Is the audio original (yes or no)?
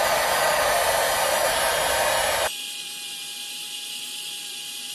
yes